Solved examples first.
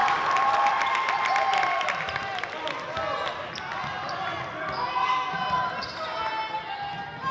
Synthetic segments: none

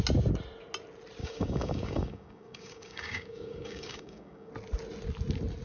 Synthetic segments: 1.2-4.5 (codec, DAC)

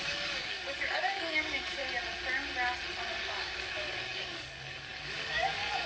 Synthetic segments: 0.0-1.8 (codec, DAC); 3.1-5.9

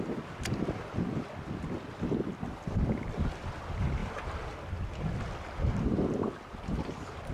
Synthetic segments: none

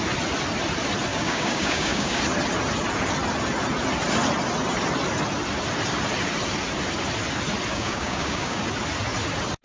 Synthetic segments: 1.1-2.2 (codec, DAC); 7.7-8.6